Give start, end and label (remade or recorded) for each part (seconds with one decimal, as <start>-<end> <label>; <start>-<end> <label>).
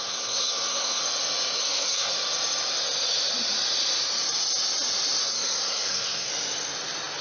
0.0-1.0 remade; 1.0-1.6 recorded; 1.6-2.1 remade; 2.1-5.2 recorded; 5.2-6.3 remade; 6.3-7.2 recorded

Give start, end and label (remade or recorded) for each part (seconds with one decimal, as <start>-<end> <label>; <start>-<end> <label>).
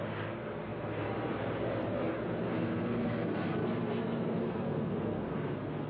0.0-2.4 recorded; 2.4-5.9 remade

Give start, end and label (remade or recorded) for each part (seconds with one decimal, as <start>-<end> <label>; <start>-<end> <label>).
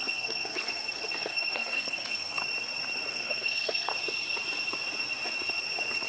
0.0-2.4 remade; 2.4-3.1 recorded; 3.1-3.9 remade; 3.9-6.1 recorded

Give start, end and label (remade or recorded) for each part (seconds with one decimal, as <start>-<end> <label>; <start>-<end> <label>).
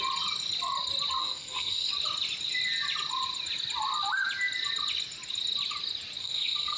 0.0-1.2 recorded; 1.2-1.9 remade; 1.9-6.2 recorded; 6.2-6.8 remade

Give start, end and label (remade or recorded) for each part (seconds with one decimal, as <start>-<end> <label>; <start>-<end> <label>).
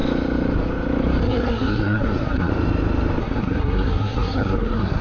0.0-1.2 recorded; 1.2-2.5 remade; 2.5-3.2 recorded; 3.2-5.0 remade